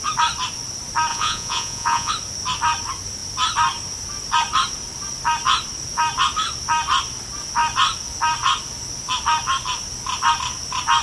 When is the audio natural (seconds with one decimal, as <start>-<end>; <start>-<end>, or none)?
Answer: 0.0-1.1; 2.1-11.0